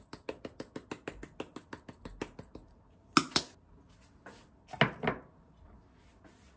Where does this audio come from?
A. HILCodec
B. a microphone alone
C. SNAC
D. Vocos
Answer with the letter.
B